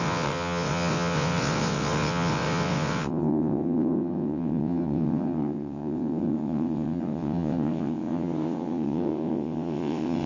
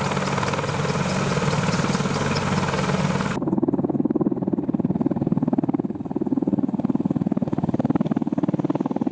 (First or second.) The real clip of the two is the second